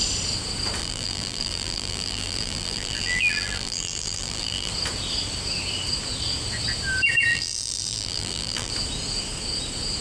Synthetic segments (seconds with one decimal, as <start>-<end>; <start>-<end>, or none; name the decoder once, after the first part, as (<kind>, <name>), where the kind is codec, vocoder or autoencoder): 0.8-4.7 (vocoder, BigVGAN v2); 7.3-8.7